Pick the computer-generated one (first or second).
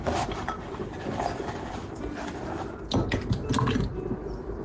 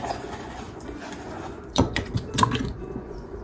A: second